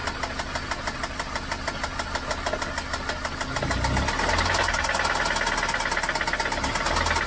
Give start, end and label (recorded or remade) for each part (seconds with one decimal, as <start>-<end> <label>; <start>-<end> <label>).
0.0-7.3 recorded